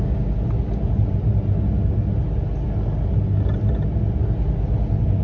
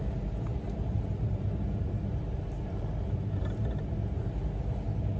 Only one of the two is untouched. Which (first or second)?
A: first